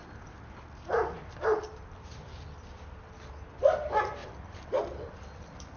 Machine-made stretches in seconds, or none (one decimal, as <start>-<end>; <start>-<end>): 4.2-4.8